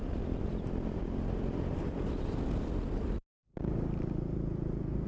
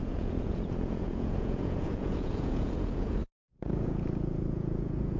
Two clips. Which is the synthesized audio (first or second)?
second